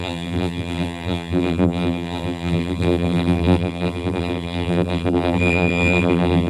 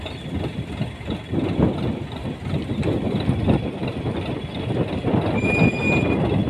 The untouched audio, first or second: second